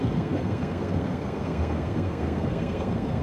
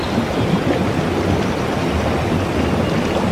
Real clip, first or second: second